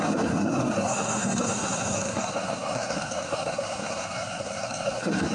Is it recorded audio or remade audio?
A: remade